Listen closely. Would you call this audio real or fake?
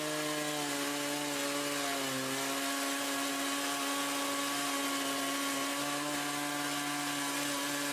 real